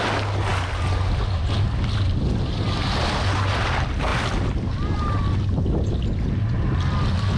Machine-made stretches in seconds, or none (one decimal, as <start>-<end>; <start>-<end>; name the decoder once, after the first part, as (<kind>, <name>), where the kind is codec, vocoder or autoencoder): none